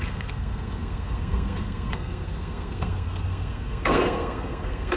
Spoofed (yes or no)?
yes